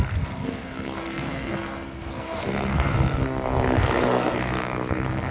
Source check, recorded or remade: remade